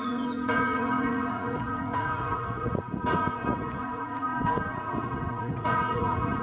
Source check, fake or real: fake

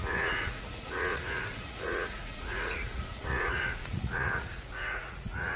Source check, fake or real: fake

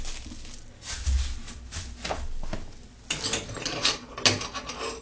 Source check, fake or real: real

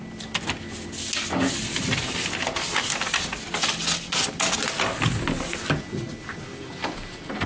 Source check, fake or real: real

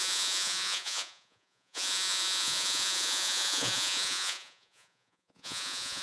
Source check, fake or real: fake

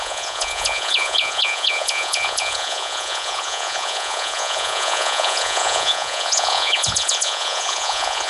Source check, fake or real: fake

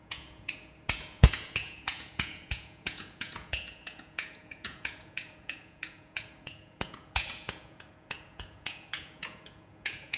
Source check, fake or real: fake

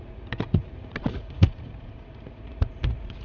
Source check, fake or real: fake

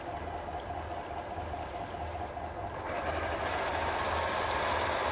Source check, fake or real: real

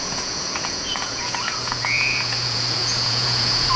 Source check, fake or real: fake